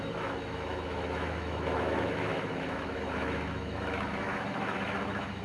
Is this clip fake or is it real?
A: fake